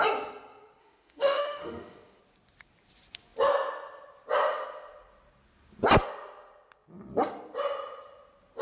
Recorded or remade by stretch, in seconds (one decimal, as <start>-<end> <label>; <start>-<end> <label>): 0.0-0.8 recorded; 0.8-2.2 remade; 2.2-8.6 recorded